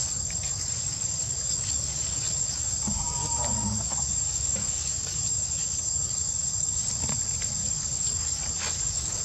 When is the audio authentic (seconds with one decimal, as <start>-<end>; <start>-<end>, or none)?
2.7-3.2; 6.9-7.6